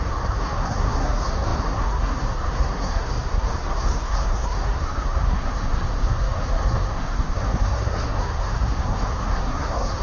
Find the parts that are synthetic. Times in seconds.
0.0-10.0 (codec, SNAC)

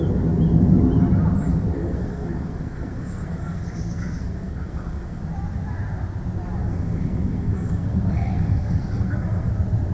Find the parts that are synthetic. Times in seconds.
1.8-5.2 (codec, SNAC); 6.6-9.5

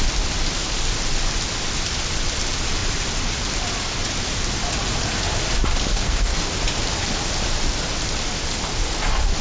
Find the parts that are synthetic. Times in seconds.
5.9-6.5 (codec, SNAC)